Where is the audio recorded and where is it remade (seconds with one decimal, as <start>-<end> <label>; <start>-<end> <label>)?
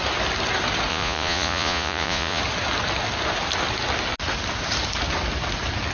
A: 0.0-0.9 recorded; 0.9-2.4 remade; 2.4-5.9 recorded